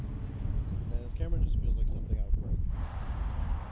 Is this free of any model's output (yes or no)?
yes